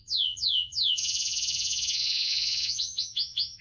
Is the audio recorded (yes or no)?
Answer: no